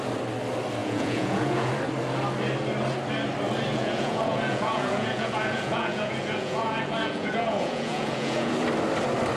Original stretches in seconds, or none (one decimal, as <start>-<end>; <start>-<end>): 0.0-0.8; 1.7-3.7; 8.5-9.4